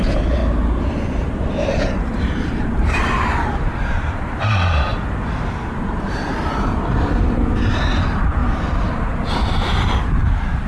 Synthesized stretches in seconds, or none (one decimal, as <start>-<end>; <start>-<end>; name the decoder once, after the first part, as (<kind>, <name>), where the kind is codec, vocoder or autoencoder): 0.0-0.4 (vocoder, BigVGAN v2); 1.2-10.7